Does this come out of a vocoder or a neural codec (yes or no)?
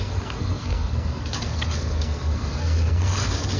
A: yes